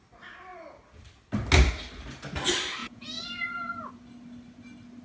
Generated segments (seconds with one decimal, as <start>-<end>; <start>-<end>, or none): 2.8-3.9